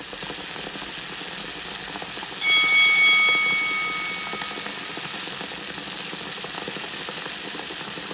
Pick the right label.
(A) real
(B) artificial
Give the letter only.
A